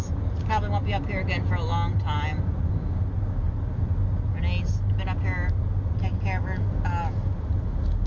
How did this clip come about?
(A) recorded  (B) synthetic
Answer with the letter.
A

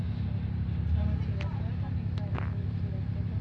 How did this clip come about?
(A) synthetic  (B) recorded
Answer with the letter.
B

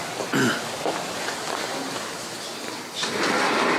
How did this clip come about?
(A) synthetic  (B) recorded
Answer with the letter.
B